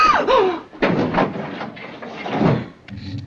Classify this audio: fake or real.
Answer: real